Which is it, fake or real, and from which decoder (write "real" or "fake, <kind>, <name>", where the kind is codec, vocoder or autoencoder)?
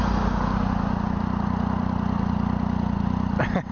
real